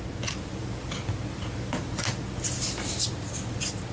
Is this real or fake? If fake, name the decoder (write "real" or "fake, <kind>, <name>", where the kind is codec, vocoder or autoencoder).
real